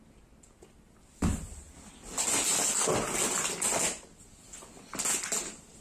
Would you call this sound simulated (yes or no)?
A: no